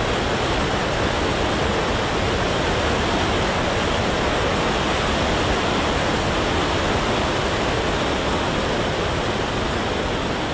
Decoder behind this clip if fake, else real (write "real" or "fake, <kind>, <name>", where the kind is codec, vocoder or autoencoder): real